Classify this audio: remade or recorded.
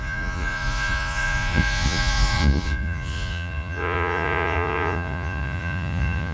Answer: remade